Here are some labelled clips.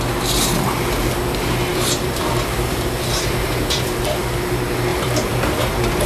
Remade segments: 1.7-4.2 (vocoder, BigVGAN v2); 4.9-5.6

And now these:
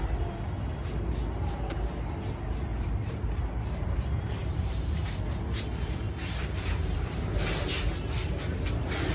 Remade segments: 2.7-5.2 (vocoder, BigVGAN v2); 5.7-8.0

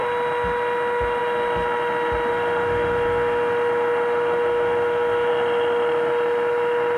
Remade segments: 2.3-5.3 (autoencoder, DAC-VAE)

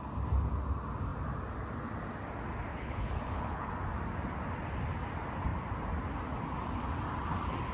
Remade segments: 2.7-3.7 (codec, HILCodec)